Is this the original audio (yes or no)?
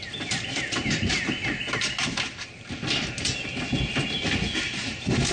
yes